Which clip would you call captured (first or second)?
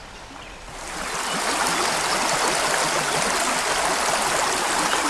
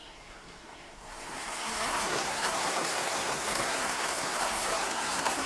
first